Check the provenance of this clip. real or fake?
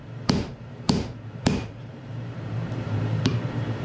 fake